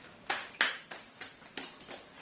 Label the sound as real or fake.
real